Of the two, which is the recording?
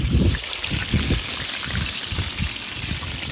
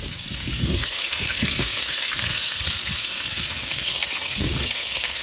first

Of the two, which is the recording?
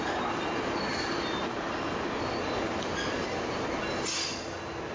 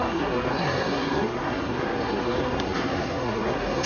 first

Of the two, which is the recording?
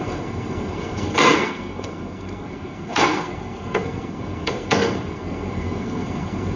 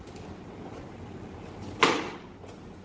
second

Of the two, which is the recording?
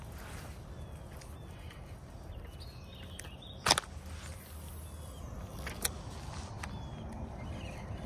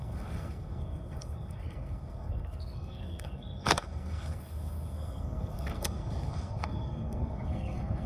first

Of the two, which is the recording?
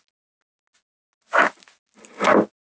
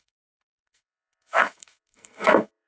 first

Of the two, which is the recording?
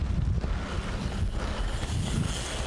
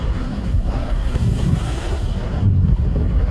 first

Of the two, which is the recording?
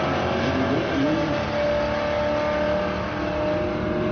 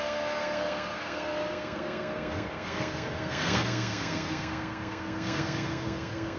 first